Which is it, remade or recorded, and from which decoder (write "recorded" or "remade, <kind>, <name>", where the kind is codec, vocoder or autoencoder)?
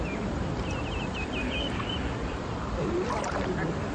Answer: remade, vocoder, BigVGAN v2